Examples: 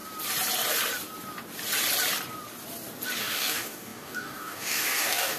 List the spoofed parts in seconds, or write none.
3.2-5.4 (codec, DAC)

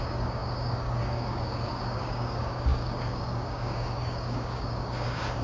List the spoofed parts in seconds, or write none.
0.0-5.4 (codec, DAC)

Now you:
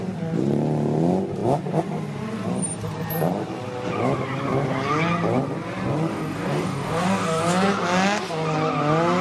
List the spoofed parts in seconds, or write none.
6.1-7.4 (codec, DAC)

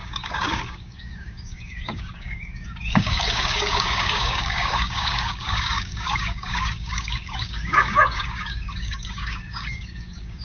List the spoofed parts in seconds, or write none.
0.0-10.4 (codec, DAC)

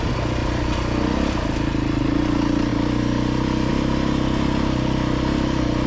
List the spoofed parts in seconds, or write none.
none

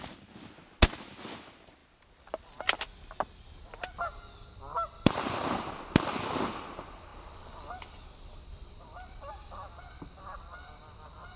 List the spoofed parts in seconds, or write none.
none